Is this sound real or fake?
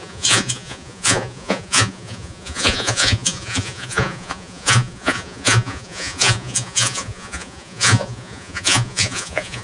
fake